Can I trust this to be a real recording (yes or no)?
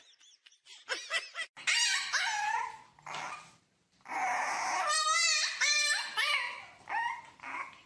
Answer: yes